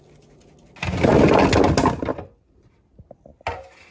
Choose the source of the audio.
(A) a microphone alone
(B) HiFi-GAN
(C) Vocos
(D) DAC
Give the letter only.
A